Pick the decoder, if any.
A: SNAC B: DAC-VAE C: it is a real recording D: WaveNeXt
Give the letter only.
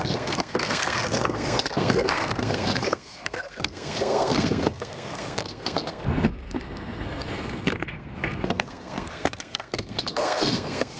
A